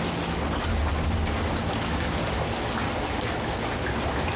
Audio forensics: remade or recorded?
recorded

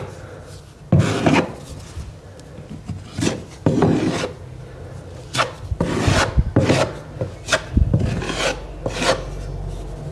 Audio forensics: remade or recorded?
recorded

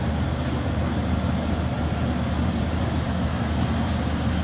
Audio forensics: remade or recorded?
recorded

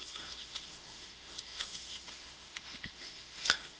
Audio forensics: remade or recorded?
remade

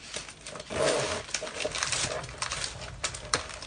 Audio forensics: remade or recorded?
recorded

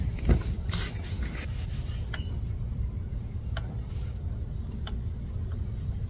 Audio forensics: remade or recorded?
recorded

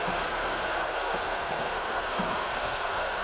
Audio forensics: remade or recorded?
remade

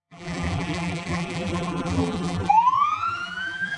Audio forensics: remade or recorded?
remade